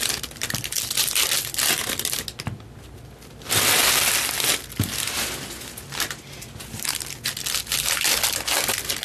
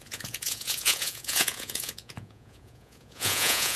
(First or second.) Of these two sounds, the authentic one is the first